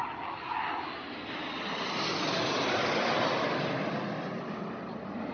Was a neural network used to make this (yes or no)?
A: no